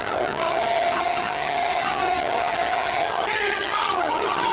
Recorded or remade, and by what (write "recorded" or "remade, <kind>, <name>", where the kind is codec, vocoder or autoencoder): remade, vocoder, HiFi-GAN